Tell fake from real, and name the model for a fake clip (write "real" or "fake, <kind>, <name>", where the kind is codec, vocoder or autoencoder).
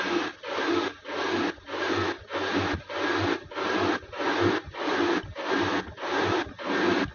real